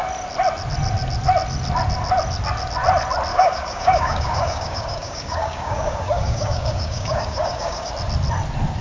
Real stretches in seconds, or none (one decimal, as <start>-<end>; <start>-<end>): 0.0-3.3; 7.9-8.8